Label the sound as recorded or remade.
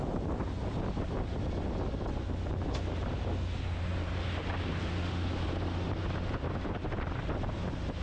recorded